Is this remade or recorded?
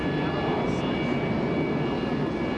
recorded